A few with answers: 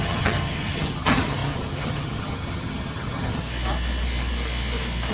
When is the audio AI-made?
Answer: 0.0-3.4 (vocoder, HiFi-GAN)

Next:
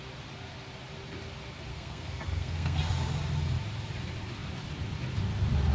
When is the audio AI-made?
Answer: 1.7-2.8 (codec, SNAC)

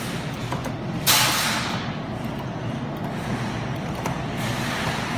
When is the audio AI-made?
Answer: 0.4-2.8 (vocoder, BigVGAN v2); 3.7-4.3